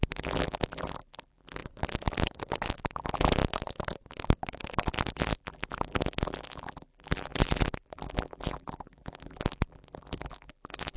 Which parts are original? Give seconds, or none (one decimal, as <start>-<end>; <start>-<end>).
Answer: 1.6-2.9; 3.4-5.1